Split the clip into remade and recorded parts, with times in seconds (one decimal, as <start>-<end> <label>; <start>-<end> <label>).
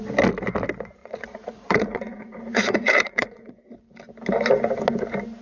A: 0.0-1.0 recorded; 1.0-3.5 remade; 3.5-5.4 recorded